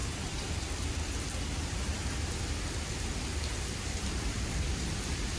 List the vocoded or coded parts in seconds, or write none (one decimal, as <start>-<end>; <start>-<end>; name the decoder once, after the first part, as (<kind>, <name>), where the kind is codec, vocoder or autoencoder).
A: 0.0-2.4 (vocoder, BigVGAN v2); 3.3-4.7